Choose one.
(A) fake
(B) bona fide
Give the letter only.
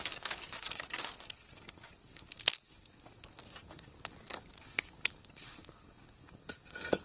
A